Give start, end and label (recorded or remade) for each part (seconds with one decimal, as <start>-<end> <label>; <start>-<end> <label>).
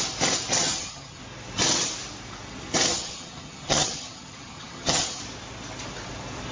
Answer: 0.0-0.6 recorded; 0.6-1.2 remade; 1.2-2.9 recorded; 2.9-5.2 remade; 5.2-6.5 recorded